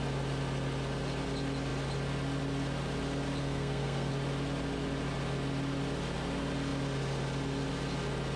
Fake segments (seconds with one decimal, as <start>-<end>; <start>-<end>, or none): 3.4-4.1